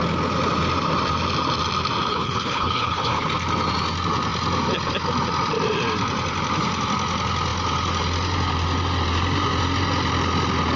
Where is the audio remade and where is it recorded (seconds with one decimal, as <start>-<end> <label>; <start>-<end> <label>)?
0.0-2.1 recorded; 2.1-3.3 remade; 3.3-10.8 recorded